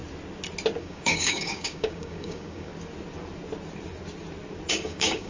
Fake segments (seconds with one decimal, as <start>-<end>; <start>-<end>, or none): 0.8-2.7; 4.7-5.3